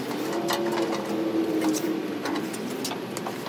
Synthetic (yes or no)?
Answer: no